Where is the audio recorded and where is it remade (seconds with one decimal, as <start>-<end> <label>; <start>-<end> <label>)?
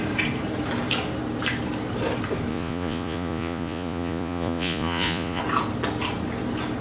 0.0-2.5 recorded; 2.5-5.4 remade; 5.4-6.8 recorded